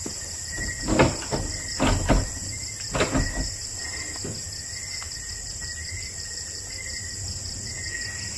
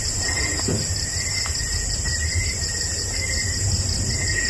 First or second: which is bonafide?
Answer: first